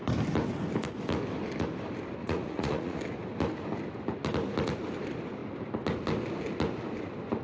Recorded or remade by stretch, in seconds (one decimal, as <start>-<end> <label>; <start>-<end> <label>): 0.0-2.2 recorded; 2.2-3.0 remade; 3.0-7.4 recorded